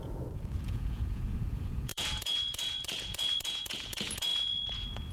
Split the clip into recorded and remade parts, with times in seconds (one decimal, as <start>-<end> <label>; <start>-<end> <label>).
0.0-5.1 remade